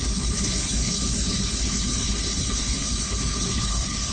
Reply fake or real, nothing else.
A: fake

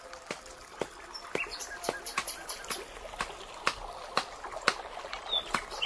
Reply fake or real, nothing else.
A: real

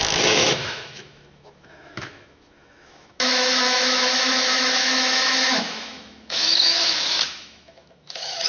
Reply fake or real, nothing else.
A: fake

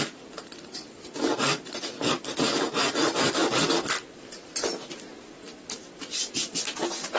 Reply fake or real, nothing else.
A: fake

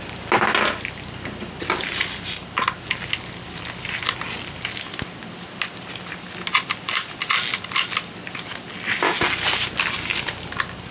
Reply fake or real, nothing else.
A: real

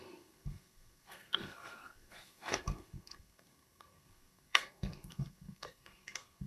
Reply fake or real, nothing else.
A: fake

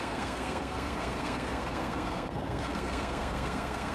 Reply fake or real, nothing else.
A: fake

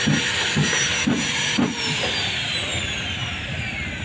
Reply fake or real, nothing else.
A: real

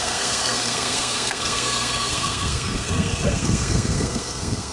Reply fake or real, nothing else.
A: fake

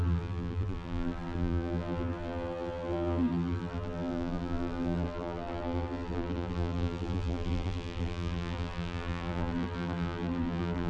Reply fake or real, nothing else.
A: fake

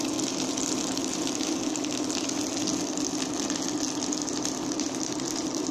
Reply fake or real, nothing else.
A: real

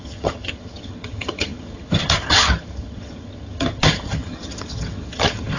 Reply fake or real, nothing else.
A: fake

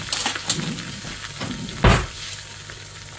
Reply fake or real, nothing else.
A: real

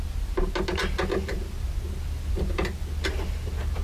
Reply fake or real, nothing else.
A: real